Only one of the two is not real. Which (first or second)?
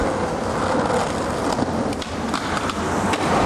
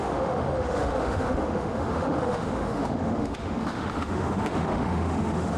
second